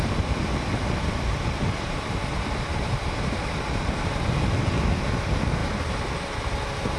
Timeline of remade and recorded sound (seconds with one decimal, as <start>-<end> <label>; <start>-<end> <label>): 0.0-7.0 recorded